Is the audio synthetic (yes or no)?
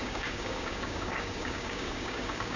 yes